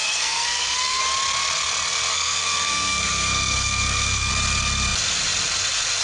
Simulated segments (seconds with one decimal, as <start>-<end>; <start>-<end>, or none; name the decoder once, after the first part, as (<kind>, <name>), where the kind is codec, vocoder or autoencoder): 0.0-1.0 (codec, SNAC); 2.1-4.3